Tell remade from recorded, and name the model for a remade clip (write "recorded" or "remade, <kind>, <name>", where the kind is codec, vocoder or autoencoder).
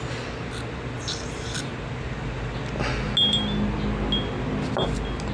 recorded